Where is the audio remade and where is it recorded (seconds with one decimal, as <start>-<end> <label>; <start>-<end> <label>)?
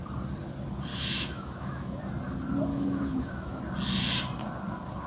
0.0-0.9 recorded; 0.9-2.0 remade; 2.0-2.7 recorded; 2.7-3.6 remade; 3.6-5.1 recorded